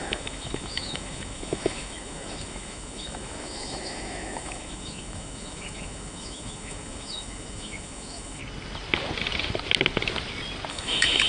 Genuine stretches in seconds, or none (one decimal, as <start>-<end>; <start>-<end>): 8.4-10.7